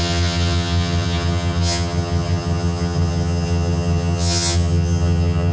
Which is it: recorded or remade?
remade